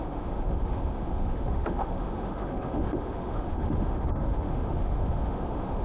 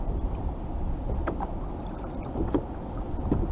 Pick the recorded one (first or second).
second